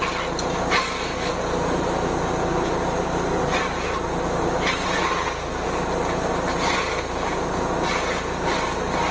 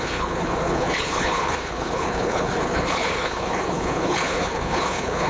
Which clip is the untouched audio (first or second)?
first